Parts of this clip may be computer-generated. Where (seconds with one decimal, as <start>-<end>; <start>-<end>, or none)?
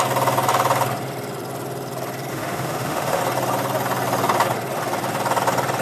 2.3-3.2